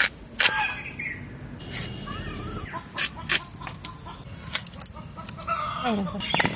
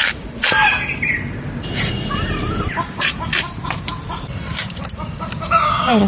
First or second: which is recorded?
first